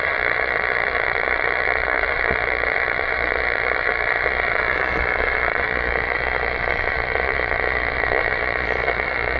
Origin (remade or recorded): remade